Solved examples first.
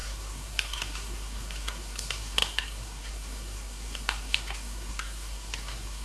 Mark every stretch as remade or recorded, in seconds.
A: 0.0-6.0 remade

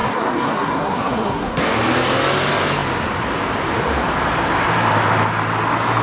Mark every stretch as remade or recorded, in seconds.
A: 0.0-1.6 remade; 1.6-6.0 recorded

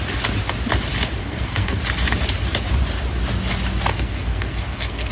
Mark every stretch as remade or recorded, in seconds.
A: 0.0-1.2 recorded; 1.2-1.8 remade; 1.8-3.9 recorded; 3.9-5.1 remade